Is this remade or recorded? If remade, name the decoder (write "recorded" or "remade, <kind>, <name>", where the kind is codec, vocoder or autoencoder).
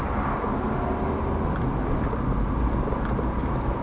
recorded